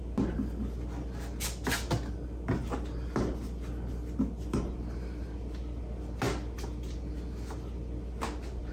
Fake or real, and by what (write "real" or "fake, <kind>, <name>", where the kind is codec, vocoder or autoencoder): real